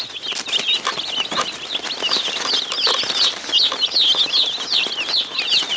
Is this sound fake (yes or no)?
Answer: no